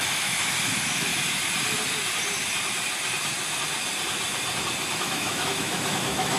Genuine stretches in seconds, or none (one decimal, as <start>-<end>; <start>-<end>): 1.1-4.9